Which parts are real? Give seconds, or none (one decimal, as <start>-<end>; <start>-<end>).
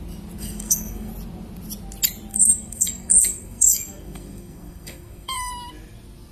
0.0-0.4; 1.1-2.3; 5.5-6.3